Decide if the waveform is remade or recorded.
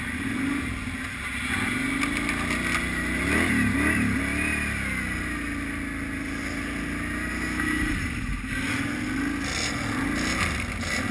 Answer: recorded